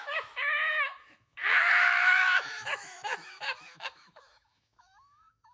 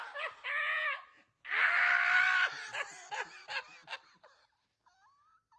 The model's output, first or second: first